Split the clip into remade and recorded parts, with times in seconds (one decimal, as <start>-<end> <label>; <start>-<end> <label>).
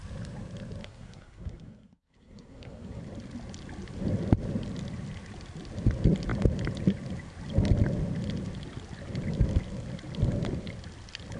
0.0-0.8 recorded; 0.8-3.0 remade; 3.0-11.4 recorded